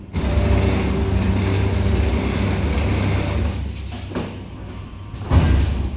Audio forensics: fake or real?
real